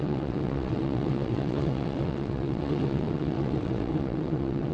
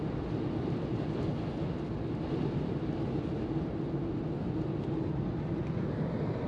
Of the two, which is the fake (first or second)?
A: first